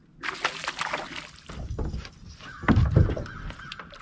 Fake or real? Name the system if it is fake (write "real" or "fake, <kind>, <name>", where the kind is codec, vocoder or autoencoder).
real